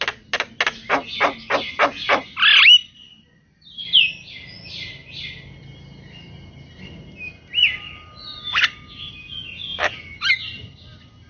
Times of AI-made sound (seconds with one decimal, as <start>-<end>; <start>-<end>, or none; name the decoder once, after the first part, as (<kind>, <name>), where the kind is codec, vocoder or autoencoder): none